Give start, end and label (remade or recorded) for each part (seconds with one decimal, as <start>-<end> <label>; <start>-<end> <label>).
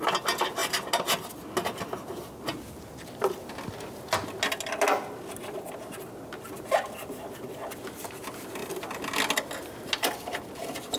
0.0-11.0 recorded